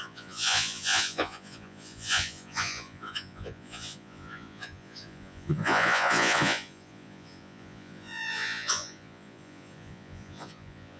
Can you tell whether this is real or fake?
fake